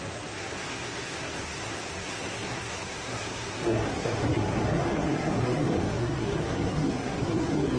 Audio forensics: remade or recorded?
remade